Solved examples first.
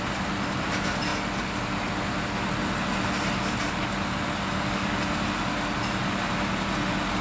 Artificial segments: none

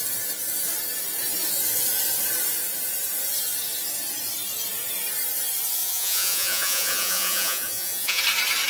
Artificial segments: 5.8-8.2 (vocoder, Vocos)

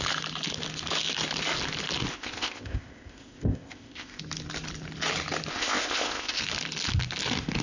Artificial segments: 2.1-4.2 (codec, ZipCodec); 5.5-6.4

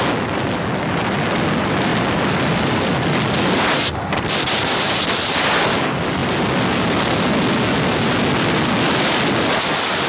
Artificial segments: none